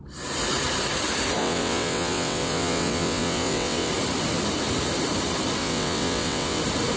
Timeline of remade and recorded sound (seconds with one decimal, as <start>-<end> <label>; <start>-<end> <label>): 0.0-1.4 recorded; 1.4-3.9 remade; 3.9-5.6 recorded; 5.6-6.6 remade; 6.6-7.0 recorded